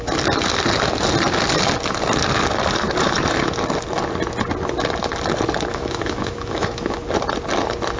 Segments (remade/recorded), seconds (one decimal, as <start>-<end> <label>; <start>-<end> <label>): 0.0-5.7 recorded; 5.7-7.0 remade; 7.0-8.0 recorded